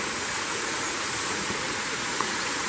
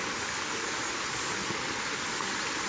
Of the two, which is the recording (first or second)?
second